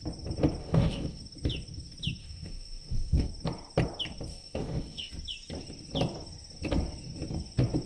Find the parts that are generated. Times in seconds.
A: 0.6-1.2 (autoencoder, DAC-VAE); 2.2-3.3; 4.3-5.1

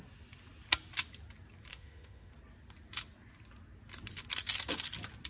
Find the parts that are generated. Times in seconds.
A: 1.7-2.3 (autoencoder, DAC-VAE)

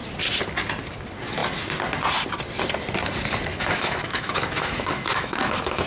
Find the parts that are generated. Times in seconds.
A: 3.5-5.9 (autoencoder, DAC-VAE)

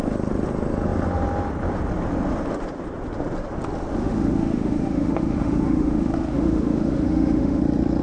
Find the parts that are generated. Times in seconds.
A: 4.0-7.6 (autoencoder, DAC-VAE)

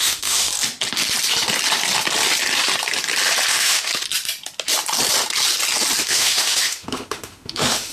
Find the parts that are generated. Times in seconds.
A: 0.0-0.5 (autoencoder, DAC-VAE); 3.5-3.9; 6.0-7.9